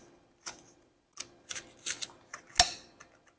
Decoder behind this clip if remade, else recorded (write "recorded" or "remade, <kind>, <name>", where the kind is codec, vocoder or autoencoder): recorded